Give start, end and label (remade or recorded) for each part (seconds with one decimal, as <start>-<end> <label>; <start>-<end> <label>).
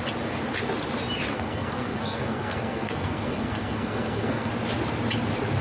0.0-1.3 recorded; 1.3-4.5 remade; 4.5-5.6 recorded